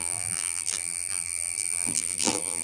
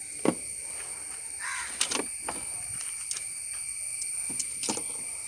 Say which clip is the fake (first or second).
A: first